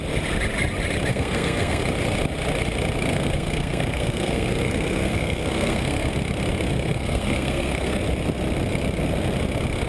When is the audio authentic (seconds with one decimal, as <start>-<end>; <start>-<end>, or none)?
0.0-1.1; 1.8-3.1; 6.1-6.7; 8.0-9.9